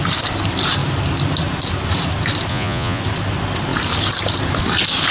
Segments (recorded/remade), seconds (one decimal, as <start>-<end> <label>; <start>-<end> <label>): 0.0-2.5 recorded; 2.5-3.0 remade; 3.0-5.1 recorded